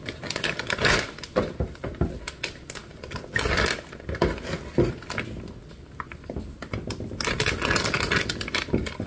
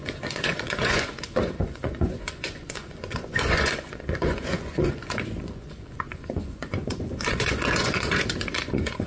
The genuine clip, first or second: first